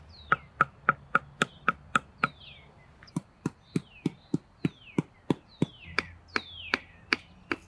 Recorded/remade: recorded